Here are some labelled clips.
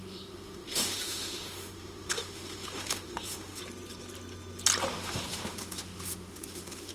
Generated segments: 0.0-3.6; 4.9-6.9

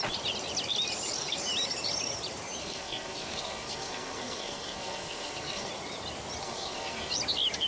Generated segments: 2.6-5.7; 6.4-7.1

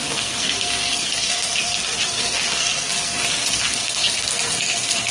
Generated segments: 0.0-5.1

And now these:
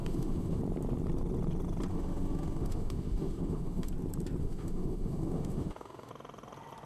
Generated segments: 0.0-0.6; 1.9-3.9; 4.4-6.1

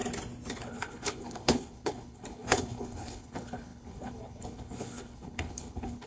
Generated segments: 0.5-6.1

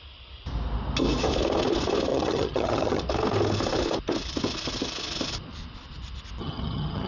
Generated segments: 2.1-3.0; 6.4-7.1